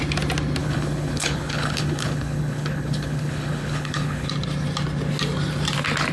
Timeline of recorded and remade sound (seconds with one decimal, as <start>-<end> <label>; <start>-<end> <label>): 0.0-0.6 recorded; 0.6-4.3 remade; 4.3-6.1 recorded